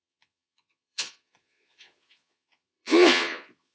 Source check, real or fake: fake